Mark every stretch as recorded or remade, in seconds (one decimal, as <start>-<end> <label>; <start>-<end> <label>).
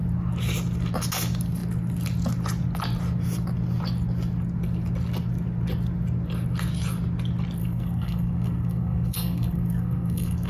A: 0.0-7.6 recorded; 7.6-10.5 remade